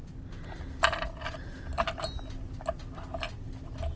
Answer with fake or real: real